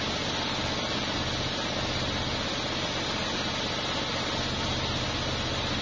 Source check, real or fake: real